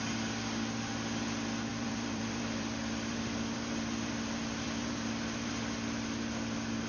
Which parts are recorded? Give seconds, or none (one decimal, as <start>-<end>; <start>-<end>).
0.0-1.7; 5.6-6.9